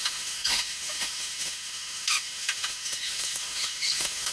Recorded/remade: remade